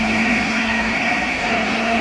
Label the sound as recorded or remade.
remade